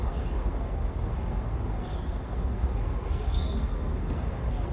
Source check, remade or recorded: remade